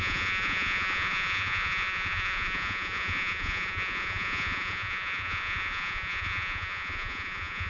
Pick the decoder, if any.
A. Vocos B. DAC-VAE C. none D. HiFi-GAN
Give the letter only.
A